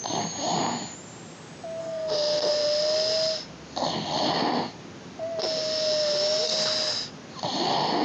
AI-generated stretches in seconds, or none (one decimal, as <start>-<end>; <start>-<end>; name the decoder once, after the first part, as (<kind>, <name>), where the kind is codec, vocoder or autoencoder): 1.8-2.5 (codec, SNAC)